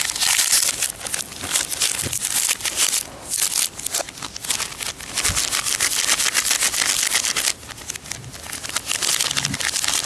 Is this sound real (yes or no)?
yes